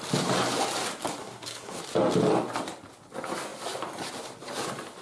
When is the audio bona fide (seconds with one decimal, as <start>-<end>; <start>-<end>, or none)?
0.0-1.2; 1.8-5.0